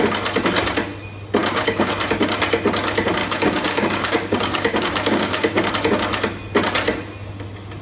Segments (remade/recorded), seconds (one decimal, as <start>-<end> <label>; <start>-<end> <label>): 0.0-1.4 recorded; 1.4-1.9 remade; 1.9-3.2 recorded; 3.2-5.7 remade; 5.7-7.8 recorded